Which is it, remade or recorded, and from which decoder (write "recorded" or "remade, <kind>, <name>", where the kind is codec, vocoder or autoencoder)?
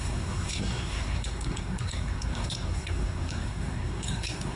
remade, codec, SNAC